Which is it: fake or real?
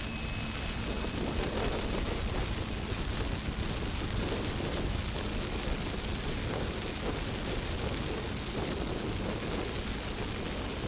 real